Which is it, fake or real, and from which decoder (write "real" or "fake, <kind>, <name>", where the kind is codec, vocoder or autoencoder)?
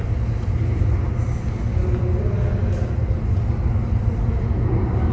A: real